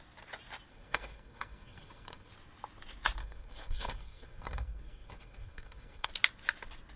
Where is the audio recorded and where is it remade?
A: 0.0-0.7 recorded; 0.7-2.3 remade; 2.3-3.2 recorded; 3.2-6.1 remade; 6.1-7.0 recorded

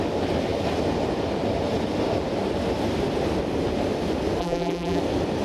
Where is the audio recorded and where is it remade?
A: 0.0-4.4 recorded; 4.4-5.0 remade; 5.0-5.4 recorded